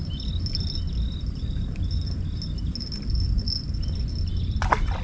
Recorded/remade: recorded